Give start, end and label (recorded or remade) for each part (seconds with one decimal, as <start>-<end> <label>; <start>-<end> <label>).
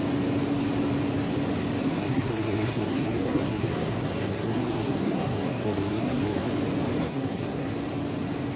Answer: 0.0-1.8 recorded; 1.8-6.5 remade; 6.5-7.0 recorded; 7.0-7.7 remade; 7.7-8.6 recorded